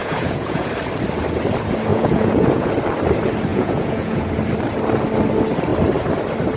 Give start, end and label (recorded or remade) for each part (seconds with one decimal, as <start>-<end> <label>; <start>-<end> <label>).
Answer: 0.0-0.7 remade; 0.7-1.9 recorded; 1.9-2.7 remade; 2.7-3.5 recorded; 3.5-4.3 remade; 4.3-6.6 recorded